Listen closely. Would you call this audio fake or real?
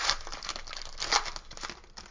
real